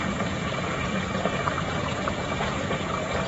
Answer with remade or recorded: remade